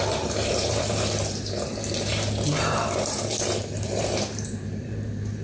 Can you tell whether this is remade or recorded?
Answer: remade